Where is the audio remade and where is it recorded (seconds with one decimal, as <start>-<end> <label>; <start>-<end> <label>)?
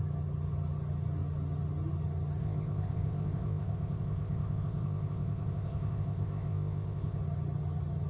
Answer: 0.0-2.4 recorded; 2.4-7.2 remade; 7.2-8.1 recorded